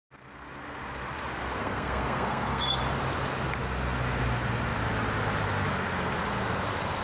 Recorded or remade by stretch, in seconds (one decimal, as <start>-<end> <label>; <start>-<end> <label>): 0.0-1.6 recorded; 1.6-2.8 remade; 2.8-7.0 recorded